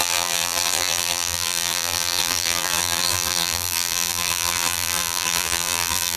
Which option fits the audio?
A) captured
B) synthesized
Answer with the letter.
B